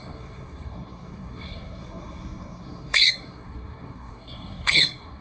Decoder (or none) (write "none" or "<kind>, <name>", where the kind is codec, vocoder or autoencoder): codec, SNAC